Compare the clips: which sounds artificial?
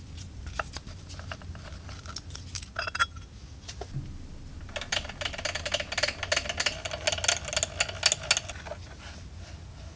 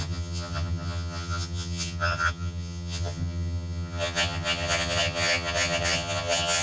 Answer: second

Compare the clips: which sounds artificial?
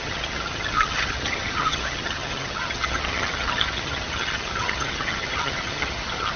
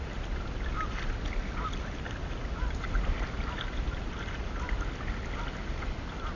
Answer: first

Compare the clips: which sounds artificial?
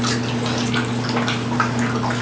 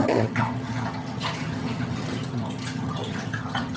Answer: second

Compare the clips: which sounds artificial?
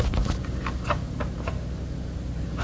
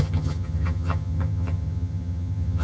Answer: second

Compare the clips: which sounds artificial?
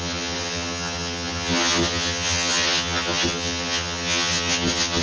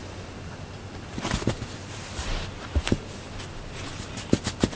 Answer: first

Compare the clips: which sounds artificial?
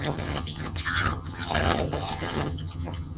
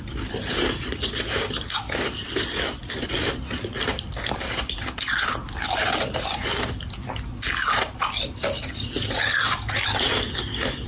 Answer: first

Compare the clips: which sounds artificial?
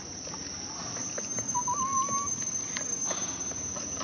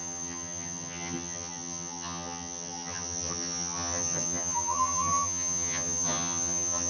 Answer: second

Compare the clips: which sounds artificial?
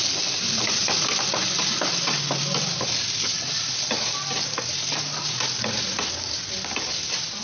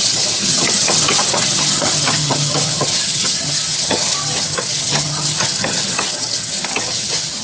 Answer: second